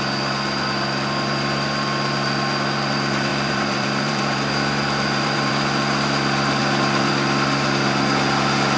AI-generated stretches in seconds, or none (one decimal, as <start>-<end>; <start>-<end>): 3.3-5.5

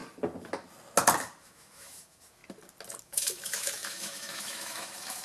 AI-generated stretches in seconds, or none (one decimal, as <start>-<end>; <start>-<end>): 1.4-2.4; 3.0-5.2

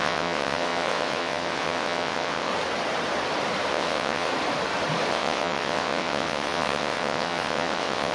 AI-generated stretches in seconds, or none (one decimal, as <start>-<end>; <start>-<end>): 0.0-2.5; 3.7-4.3; 5.1-8.1

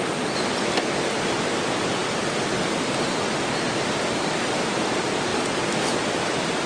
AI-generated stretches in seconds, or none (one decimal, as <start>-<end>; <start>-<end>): none

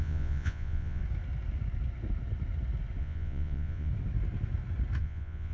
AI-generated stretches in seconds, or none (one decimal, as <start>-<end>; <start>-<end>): 0.0-1.0; 3.0-3.9; 5.0-5.5

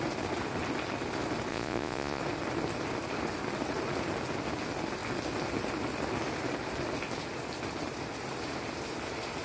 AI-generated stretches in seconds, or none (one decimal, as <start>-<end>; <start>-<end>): 1.5-2.2

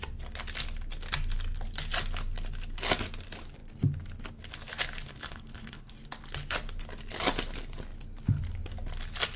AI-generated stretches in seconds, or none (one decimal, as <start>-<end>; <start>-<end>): 5.1-5.9